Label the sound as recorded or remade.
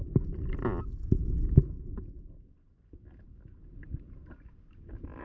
recorded